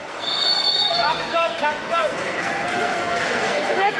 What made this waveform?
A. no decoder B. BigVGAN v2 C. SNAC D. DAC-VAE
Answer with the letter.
C